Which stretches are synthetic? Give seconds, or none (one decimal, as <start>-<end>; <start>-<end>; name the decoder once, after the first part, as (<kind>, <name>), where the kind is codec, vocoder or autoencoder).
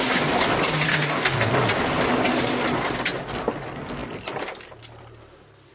0.9-1.5 (codec, DAC)